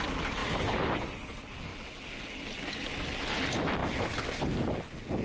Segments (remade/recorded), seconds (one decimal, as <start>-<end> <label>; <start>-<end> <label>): 0.0-5.2 recorded